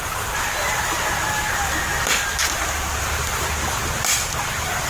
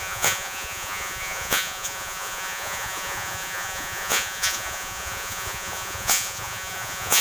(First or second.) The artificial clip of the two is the second